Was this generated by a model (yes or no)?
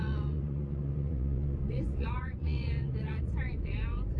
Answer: yes